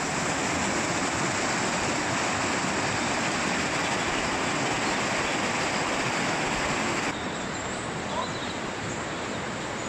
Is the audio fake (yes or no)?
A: no